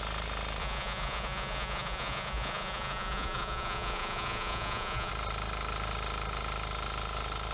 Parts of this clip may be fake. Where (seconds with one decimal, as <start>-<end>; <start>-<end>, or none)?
0.6-5.1